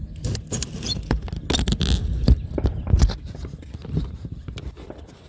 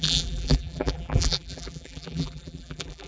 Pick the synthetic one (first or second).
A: second